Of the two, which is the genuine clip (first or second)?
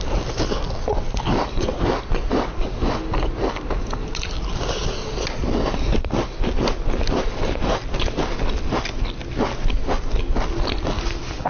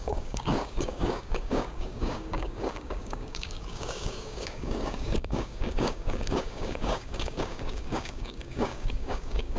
first